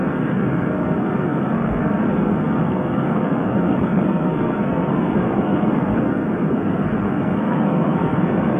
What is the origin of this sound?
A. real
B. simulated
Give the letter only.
B